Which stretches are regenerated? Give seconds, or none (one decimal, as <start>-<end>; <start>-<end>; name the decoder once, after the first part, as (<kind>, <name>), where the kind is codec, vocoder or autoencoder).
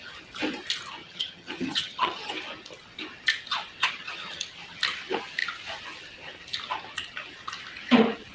1.0-2.3 (vocoder, HiFi-GAN); 3.8-4.4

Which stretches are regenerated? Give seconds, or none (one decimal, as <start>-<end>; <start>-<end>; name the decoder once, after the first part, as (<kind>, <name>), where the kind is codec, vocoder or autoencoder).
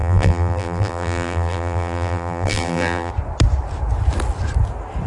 0.0-3.1 (vocoder, BigVGAN v2)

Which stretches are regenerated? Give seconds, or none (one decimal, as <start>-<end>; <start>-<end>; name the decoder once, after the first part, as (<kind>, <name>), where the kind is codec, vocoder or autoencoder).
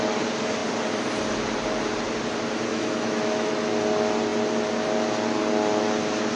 2.7-3.5 (autoencoder, DAC-VAE)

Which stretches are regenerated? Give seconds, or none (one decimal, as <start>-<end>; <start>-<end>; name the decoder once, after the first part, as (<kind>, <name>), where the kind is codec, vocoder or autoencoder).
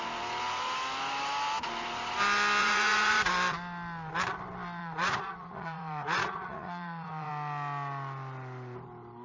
2.6-3.3 (vocoder, Vocos); 4.8-7.3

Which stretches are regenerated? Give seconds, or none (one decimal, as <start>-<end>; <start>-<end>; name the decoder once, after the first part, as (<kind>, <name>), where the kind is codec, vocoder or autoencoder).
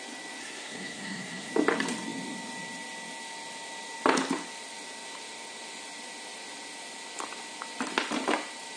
0.4-1.5 (codec, SNAC)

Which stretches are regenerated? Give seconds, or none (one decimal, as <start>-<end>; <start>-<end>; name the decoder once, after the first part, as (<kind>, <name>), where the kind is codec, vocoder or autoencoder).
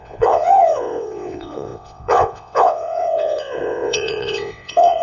0.0-5.0 (vocoder, WaveNeXt)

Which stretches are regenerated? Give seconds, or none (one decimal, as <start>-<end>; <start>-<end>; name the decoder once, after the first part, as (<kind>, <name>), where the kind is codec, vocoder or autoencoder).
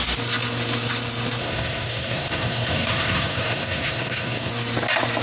1.4-4.5 (codec, SNAC)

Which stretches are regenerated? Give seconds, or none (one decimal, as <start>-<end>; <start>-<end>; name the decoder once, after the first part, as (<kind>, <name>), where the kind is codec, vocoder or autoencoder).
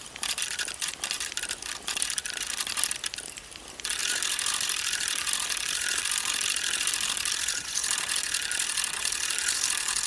none